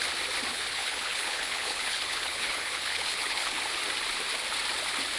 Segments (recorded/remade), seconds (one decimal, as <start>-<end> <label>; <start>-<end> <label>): 0.0-0.5 recorded; 0.5-3.6 remade; 3.6-5.2 recorded